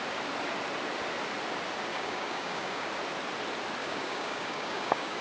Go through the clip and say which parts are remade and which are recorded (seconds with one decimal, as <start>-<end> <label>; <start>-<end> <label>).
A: 0.0-1.9 recorded; 1.9-2.9 remade; 2.9-3.8 recorded; 3.8-5.2 remade